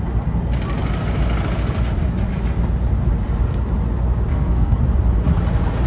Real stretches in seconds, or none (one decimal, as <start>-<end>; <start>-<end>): 0.0-4.3; 4.8-5.9